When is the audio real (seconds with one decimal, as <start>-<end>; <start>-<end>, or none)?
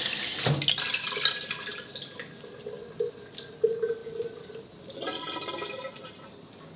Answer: 0.0-6.8